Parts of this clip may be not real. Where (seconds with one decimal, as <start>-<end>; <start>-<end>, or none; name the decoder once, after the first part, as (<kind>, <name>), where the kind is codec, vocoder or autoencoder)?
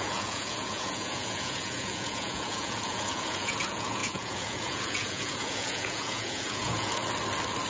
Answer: 0.0-7.0 (vocoder, Vocos)